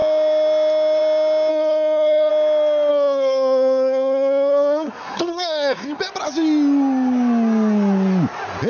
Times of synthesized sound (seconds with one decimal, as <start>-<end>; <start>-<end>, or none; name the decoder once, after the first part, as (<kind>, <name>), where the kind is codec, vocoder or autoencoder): 1.5-2.3 (codec, SNAC); 2.9-6.0

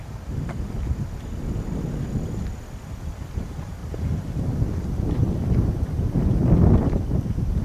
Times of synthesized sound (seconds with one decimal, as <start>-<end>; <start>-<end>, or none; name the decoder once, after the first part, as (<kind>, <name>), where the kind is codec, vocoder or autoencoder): 3.8-4.6 (vocoder, BigVGAN v2)

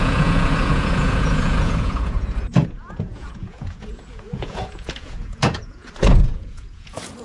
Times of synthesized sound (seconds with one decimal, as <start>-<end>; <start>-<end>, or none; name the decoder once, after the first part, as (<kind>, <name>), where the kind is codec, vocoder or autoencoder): 0.0-7.2 (vocoder, Vocos)

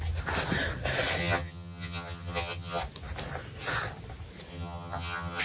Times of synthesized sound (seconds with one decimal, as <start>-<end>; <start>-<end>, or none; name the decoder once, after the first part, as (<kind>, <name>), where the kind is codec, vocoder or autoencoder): 1.2-2.8 (vocoder, HiFi-GAN); 4.5-5.4

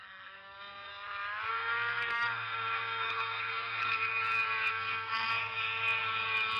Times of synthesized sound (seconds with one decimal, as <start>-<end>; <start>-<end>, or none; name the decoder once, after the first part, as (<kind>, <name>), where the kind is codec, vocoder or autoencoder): 0.0-0.9 (codec, SNAC); 1.5-4.1; 4.7-5.3

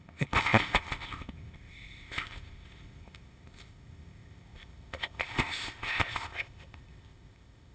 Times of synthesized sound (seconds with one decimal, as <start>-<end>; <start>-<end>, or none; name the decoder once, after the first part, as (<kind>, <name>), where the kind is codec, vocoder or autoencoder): 0.0-7.7 (codec, ZipCodec)